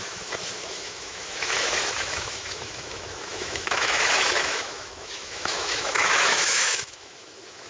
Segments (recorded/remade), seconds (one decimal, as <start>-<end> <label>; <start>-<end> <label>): 0.0-7.7 remade